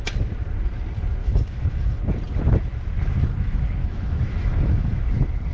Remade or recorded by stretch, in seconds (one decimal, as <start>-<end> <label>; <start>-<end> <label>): 0.0-1.2 recorded; 1.2-2.0 remade; 2.0-3.8 recorded; 3.8-5.0 remade; 5.0-5.5 recorded